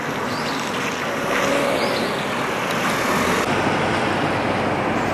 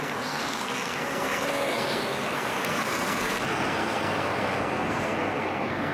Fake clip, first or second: second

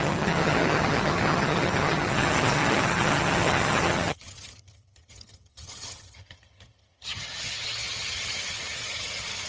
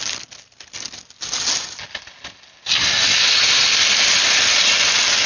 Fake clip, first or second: first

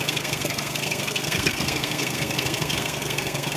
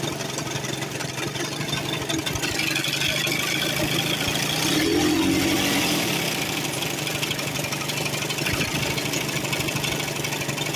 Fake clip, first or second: first